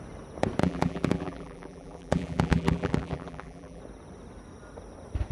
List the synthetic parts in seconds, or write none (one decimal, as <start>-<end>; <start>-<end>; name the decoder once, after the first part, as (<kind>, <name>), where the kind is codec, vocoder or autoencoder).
0.6-3.8 (vocoder, BigVGAN v2)